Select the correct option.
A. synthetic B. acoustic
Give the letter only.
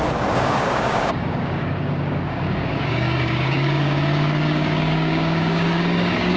A